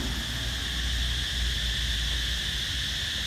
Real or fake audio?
real